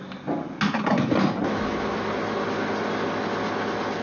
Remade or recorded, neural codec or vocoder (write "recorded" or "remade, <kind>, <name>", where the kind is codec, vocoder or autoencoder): recorded